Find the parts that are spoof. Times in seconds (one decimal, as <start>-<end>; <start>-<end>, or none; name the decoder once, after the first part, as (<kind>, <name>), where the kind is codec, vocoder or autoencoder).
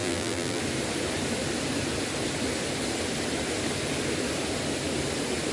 0.0-0.6 (vocoder, BigVGAN v2)